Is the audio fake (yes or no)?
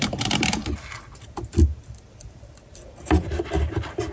no